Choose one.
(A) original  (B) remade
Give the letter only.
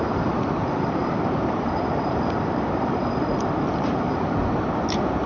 B